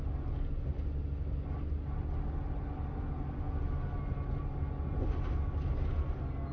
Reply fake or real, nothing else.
real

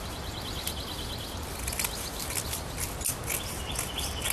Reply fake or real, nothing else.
real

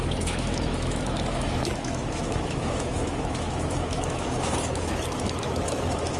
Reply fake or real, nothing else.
fake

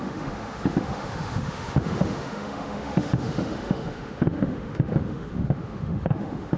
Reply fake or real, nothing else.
fake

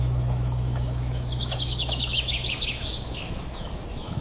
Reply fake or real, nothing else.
fake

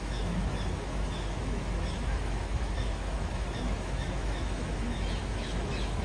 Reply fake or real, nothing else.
fake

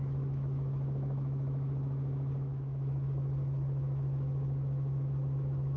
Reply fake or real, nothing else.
fake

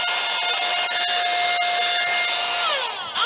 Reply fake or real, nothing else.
real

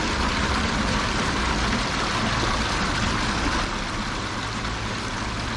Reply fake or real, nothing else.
real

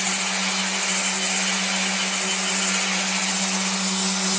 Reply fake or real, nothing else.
real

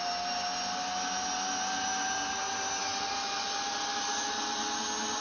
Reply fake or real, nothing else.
real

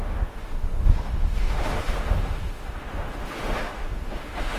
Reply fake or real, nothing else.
fake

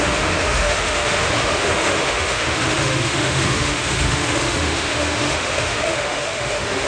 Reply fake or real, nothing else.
fake